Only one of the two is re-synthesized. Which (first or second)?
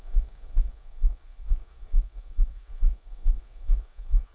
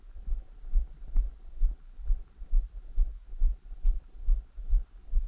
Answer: first